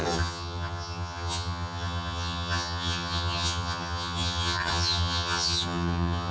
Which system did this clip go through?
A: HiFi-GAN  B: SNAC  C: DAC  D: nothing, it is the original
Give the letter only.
A